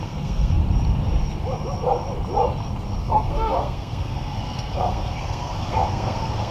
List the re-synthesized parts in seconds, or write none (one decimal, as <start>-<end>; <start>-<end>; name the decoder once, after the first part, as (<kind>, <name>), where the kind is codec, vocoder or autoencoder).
0.0-0.6 (codec, SNAC); 3.0-6.5